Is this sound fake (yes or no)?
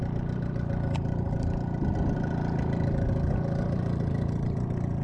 no